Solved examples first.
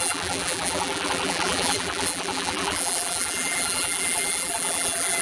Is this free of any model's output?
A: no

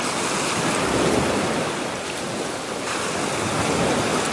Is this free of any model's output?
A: yes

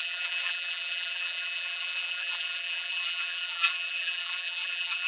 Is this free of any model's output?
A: no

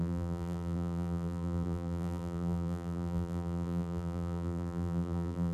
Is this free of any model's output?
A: no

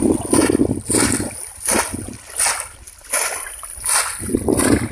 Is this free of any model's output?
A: yes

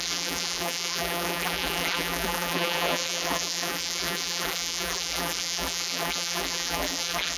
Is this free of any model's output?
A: no